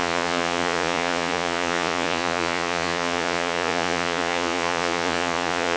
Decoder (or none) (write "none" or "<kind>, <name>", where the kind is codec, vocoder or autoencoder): vocoder, Vocos